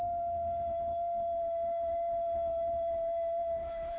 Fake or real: fake